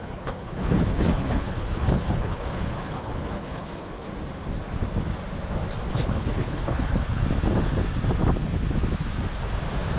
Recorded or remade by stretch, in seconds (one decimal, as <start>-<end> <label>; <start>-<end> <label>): 0.0-4.1 remade; 4.1-5.9 recorded; 5.9-7.2 remade; 7.2-10.0 recorded